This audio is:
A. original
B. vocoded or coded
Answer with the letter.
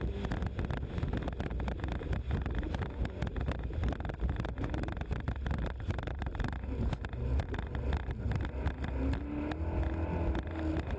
A